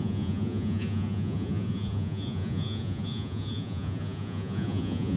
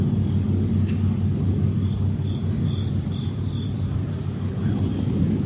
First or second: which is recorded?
second